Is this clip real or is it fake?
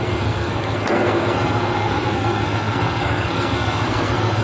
fake